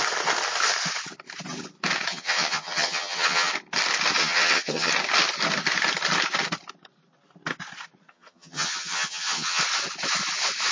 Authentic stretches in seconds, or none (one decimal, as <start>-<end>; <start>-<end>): 0.0-2.1; 3.5-4.2; 4.9-8.1; 9.6-10.7